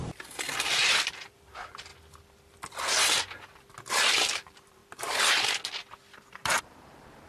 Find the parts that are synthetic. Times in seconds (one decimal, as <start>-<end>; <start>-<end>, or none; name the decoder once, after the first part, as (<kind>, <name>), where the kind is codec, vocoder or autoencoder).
0.0-1.9 (vocoder, BigVGAN v2); 3.9-4.8; 6.3-7.3